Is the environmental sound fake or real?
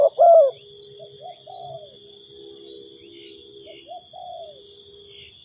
real